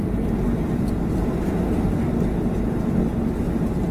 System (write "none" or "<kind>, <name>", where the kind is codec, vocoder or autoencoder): none